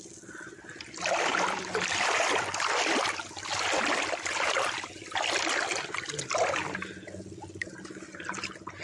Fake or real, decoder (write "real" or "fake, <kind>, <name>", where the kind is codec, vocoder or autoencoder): real